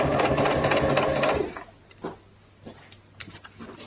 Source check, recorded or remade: recorded